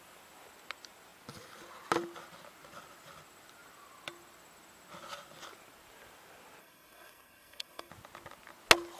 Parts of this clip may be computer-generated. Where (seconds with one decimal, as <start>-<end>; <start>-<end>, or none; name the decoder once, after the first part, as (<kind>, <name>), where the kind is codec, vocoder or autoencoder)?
6.6-7.9 (codec, SNAC)